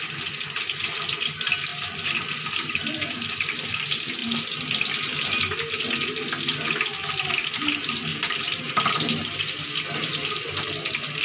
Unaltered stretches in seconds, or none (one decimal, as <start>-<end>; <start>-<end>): 0.0-1.7; 3.6-8.1; 8.7-11.2